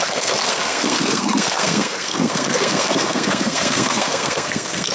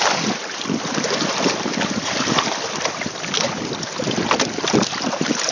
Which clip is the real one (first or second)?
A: second